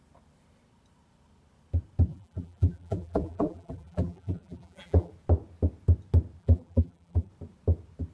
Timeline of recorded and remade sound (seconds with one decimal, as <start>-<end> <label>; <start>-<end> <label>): 0.0-2.1 recorded; 2.1-5.1 remade; 5.1-6.4 recorded; 6.4-7.3 remade; 7.3-8.1 recorded